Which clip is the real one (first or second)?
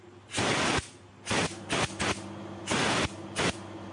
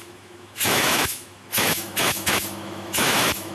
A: first